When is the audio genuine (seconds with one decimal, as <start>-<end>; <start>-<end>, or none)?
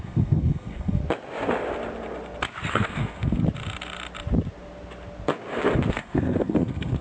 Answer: 1.0-2.7; 3.4-5.9